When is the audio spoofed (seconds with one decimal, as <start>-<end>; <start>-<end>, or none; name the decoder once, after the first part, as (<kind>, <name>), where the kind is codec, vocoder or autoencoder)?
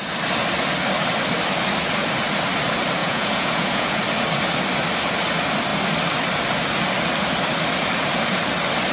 3.0-4.0 (vocoder, Vocos)